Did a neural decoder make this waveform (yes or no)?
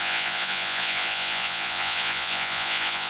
yes